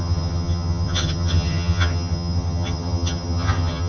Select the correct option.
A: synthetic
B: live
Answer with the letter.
A